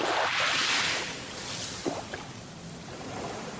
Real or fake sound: fake